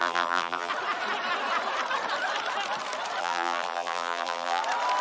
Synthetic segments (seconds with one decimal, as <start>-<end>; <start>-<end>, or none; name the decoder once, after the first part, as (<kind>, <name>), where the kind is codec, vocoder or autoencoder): 0.0-0.7 (vocoder, BigVGAN v2); 3.2-4.6